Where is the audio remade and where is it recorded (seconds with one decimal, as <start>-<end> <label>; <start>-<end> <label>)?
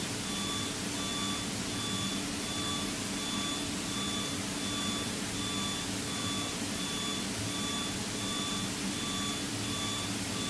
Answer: 0.0-10.5 recorded